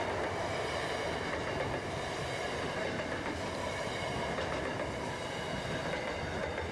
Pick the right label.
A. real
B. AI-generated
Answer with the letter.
A